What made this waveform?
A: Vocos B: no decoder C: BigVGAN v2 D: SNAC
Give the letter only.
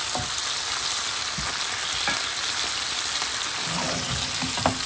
B